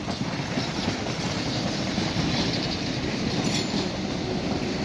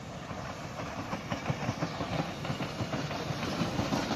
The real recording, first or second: first